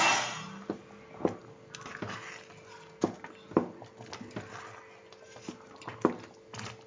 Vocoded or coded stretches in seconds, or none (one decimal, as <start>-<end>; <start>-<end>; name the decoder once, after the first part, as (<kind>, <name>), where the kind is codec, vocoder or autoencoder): none

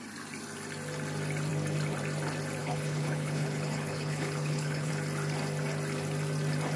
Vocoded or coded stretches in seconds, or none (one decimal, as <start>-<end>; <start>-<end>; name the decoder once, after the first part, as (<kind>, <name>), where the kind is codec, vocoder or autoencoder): 2.6-4.9 (codec, HILCodec)

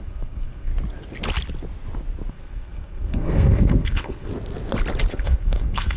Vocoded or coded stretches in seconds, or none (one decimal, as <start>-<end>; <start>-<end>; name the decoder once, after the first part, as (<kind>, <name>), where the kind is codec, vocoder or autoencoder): 0.0-0.7 (codec, SNAC); 2.3-4.3; 5.1-6.0

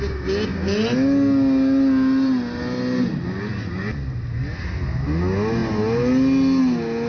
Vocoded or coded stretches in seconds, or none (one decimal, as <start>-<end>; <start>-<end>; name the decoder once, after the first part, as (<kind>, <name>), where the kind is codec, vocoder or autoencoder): none

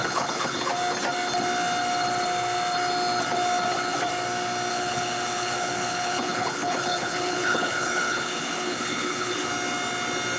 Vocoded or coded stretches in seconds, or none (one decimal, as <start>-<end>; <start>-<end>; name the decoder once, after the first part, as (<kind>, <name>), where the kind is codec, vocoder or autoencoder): 0.0-0.7 (codec, HILCodec); 4.7-9.5

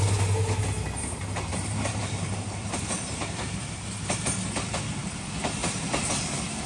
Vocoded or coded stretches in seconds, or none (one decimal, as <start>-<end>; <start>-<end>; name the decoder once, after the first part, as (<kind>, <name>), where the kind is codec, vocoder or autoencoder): 1.5-4.2 (vocoder, BigVGAN v2); 5.6-6.1